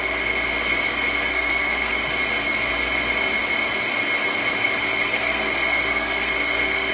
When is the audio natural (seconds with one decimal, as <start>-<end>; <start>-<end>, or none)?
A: 0.0-1.3; 2.1-4.8